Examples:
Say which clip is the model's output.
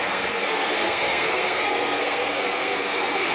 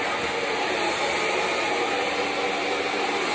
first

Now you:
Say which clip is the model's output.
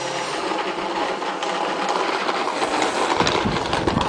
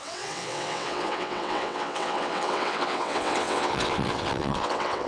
second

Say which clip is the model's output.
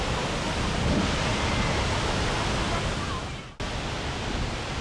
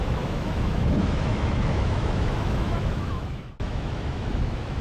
second